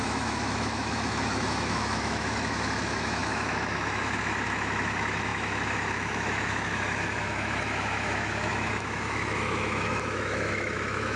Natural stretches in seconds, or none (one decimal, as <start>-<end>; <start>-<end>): none